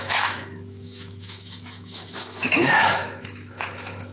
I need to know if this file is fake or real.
fake